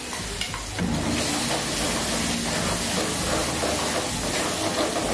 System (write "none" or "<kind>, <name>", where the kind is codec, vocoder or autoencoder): none